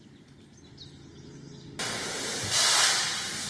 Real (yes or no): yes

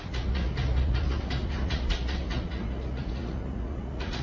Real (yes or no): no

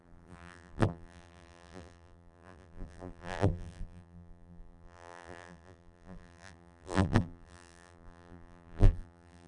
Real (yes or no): no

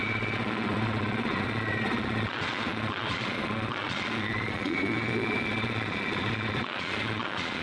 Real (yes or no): no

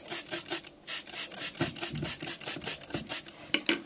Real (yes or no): yes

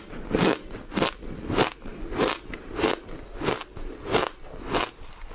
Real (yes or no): yes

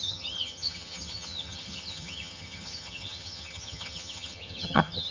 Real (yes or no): no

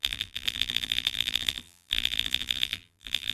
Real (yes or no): no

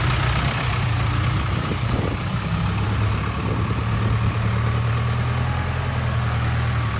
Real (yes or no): yes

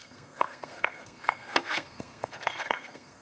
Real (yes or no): no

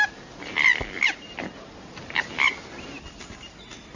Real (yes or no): yes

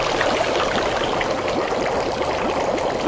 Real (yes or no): yes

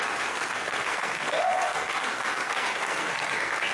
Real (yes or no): no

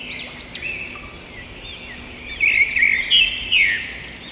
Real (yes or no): yes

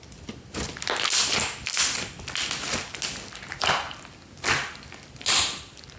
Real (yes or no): yes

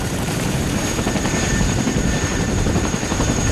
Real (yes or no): no